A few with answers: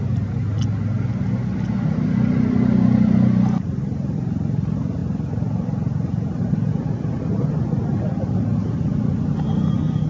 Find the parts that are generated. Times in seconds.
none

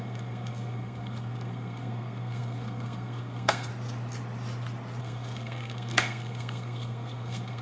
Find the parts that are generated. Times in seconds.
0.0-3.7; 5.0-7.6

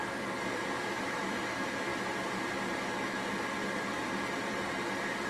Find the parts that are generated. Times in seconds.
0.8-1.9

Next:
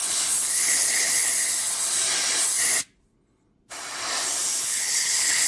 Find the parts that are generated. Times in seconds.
0.0-1.3; 4.6-5.5

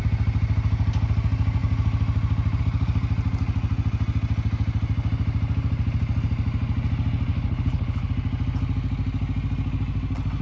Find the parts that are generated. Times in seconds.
7.3-8.1

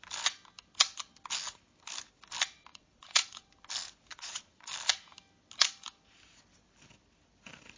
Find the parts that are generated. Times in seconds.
2.7-3.5; 4.1-4.7

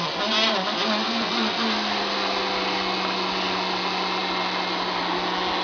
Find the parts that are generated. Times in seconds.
none